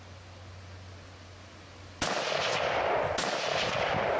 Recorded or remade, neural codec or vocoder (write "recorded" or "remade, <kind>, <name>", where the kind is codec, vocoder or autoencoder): recorded